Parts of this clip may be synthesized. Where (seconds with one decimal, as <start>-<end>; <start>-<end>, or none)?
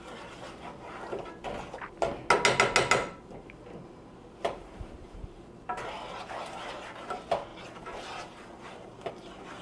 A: 3.0-5.5; 7.5-9.1